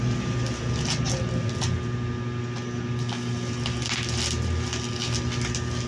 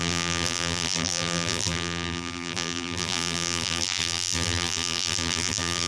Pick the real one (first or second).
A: first